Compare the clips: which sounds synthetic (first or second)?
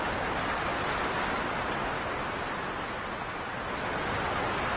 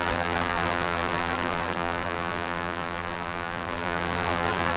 second